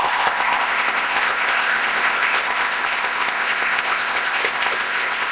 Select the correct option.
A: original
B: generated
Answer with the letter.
B